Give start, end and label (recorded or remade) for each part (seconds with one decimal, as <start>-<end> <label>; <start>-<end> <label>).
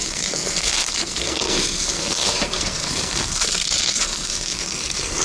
0.0-5.2 remade